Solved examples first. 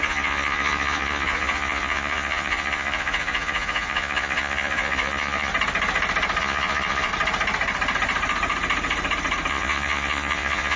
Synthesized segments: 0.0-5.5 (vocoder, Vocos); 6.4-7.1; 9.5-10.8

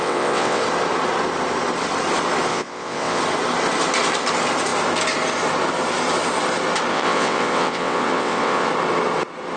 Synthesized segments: 0.0-0.6 (vocoder, WaveNeXt); 2.5-3.2; 6.9-8.7

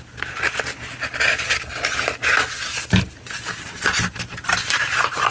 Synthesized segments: 2.8-5.3 (vocoder, BigVGAN v2)

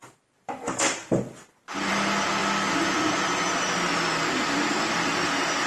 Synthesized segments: none

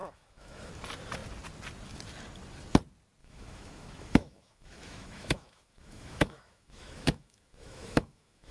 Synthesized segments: 0.0-0.7 (autoencoder, DAC-VAE); 3.2-8.5

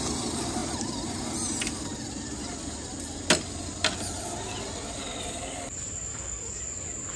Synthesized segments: 6.1-6.6 (codec, DAC)